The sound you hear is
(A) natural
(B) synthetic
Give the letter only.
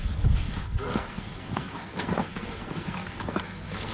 B